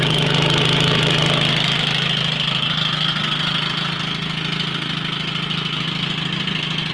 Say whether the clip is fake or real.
real